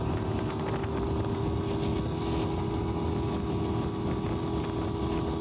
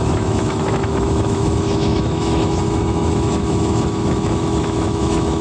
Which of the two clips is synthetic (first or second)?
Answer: second